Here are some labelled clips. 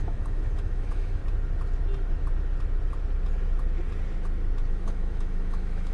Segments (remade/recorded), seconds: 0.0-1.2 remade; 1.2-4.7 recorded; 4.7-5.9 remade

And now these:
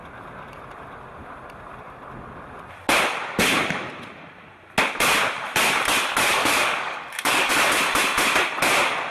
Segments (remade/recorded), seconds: 0.0-6.4 recorded; 6.4-7.5 remade; 7.5-9.1 recorded

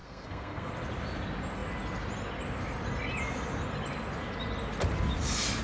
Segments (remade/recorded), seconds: 0.0-0.7 remade; 0.7-5.6 recorded

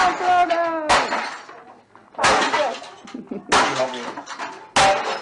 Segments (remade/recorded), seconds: 0.0-5.2 recorded

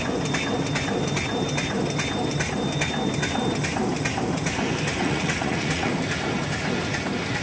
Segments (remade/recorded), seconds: 0.0-5.0 recorded; 5.0-5.9 remade; 5.9-7.4 recorded

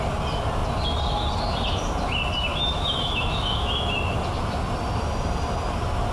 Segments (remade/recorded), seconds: 0.0-2.5 recorded; 2.5-3.7 remade; 3.7-6.1 recorded

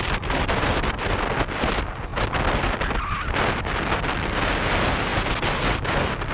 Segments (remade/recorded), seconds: 0.0-6.3 recorded

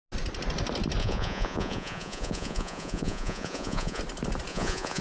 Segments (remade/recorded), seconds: 0.0-1.0 recorded; 1.0-4.0 remade; 4.0-4.5 recorded; 4.5-5.0 remade